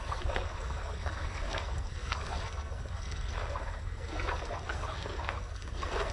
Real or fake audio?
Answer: fake